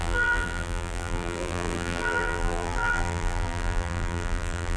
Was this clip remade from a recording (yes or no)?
yes